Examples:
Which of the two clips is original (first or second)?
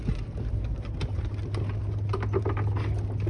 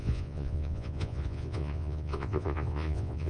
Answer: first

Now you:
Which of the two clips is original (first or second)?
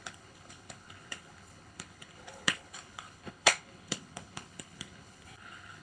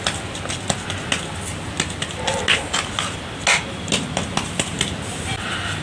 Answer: second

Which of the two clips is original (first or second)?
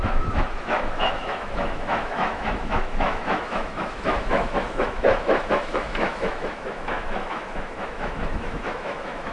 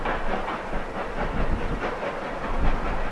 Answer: second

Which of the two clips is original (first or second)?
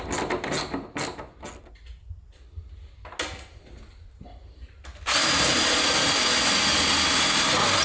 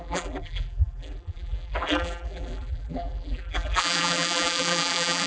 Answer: first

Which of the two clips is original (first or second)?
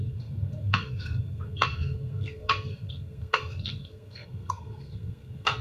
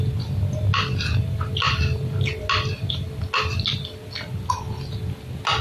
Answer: second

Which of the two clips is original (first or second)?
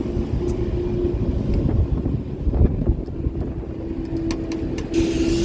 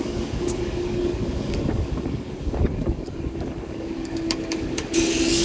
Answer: first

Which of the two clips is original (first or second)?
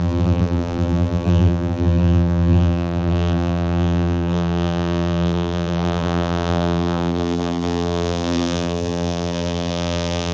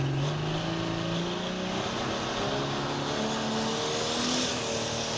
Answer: second